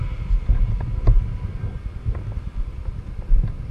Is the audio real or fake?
real